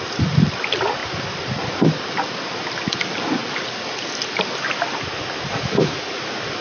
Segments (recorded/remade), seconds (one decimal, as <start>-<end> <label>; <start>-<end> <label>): 0.0-1.0 recorded; 1.0-1.9 remade; 1.9-6.6 recorded